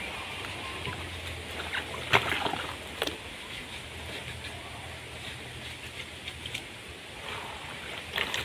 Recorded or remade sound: recorded